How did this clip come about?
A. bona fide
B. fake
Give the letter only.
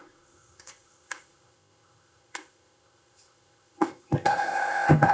B